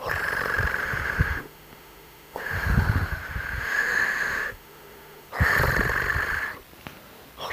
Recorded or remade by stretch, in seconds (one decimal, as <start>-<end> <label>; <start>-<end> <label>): 0.0-0.8 recorded; 0.8-5.3 remade; 5.3-7.5 recorded